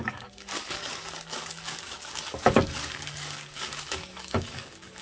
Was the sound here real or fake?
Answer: fake